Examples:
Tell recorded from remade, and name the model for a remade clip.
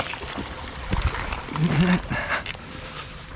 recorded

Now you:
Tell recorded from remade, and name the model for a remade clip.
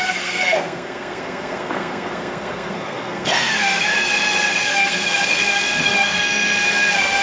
remade, codec, SNAC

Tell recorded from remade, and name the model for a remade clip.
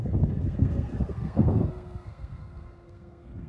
remade, codec, SNAC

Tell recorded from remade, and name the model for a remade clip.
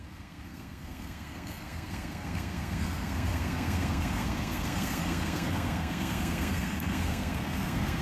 remade, codec, SNAC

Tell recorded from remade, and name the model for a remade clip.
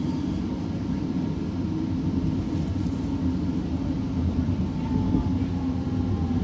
recorded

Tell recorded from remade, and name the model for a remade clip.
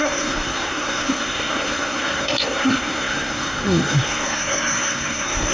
remade, codec, SNAC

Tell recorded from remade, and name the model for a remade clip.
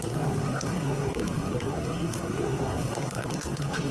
remade, codec, SNAC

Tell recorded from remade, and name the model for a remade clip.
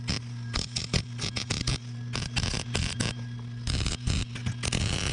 recorded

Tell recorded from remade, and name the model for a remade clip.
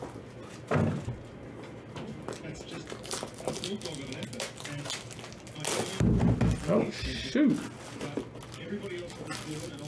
recorded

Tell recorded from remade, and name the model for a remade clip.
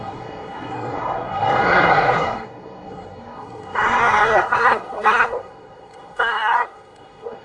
remade, codec, SNAC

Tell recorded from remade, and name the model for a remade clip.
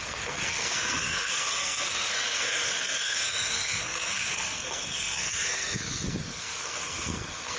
remade, codec, SNAC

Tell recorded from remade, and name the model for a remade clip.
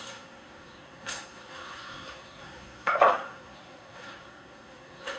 remade, codec, SNAC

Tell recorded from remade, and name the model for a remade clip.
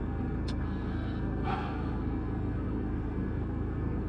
remade, codec, SNAC